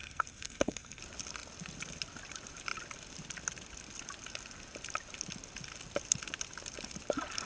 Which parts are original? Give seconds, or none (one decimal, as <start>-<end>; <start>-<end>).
1.0-7.5